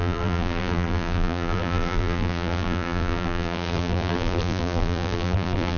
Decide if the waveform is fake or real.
fake